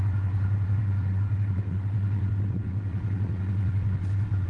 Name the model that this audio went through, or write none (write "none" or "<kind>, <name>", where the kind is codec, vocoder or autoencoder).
vocoder, WaveNeXt